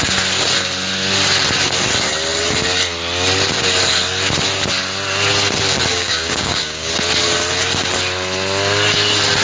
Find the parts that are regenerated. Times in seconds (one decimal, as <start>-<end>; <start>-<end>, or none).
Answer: 5.9-6.9